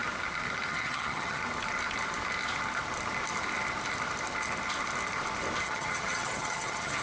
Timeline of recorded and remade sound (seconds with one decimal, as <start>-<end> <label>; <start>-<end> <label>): 0.0-0.7 recorded; 0.7-1.4 remade; 1.4-5.6 recorded; 5.6-7.0 remade